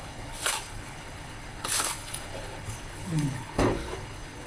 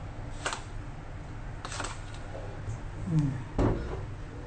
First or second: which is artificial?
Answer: first